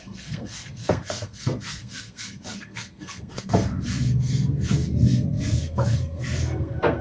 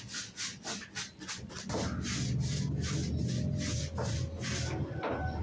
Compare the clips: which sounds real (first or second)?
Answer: second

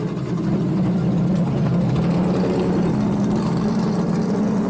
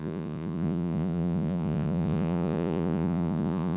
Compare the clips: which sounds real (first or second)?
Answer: first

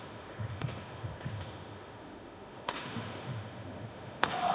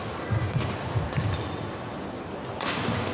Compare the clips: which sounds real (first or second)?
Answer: second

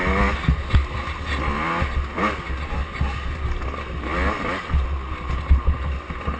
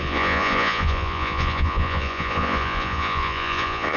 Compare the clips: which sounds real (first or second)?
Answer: first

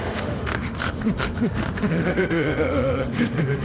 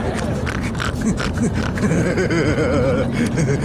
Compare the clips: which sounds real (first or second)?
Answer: second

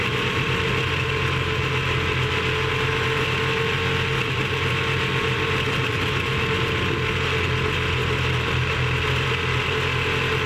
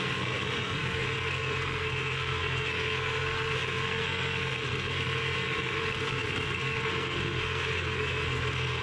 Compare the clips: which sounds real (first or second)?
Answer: first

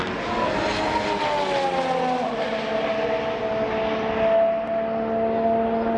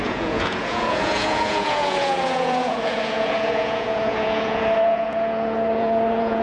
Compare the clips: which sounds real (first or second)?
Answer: first